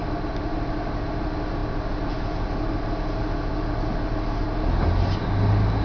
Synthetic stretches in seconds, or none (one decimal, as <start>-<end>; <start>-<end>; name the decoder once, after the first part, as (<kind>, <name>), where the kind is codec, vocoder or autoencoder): none